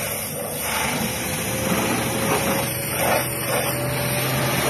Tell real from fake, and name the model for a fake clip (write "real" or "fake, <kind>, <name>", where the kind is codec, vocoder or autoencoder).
real